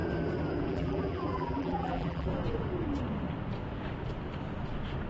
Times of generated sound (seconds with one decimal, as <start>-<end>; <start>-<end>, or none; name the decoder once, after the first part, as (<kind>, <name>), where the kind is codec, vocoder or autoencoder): 0.7-2.3 (vocoder, BigVGAN v2)